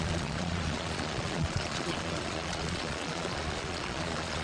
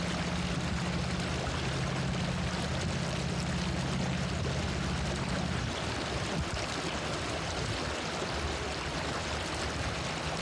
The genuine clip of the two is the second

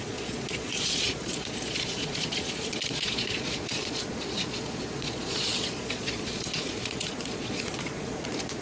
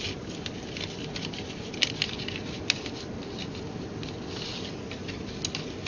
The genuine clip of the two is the second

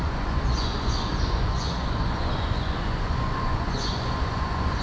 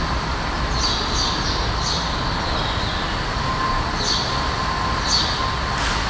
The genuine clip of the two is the second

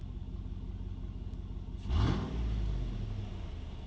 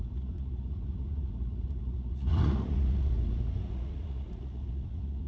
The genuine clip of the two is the first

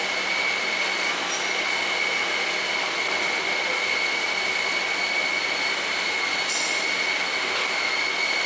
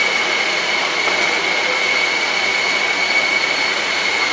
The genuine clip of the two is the first